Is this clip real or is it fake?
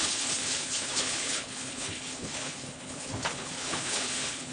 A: fake